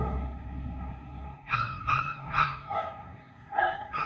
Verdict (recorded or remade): remade